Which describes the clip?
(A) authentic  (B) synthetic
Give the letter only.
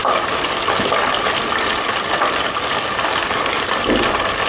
A